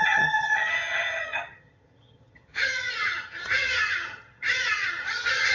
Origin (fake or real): fake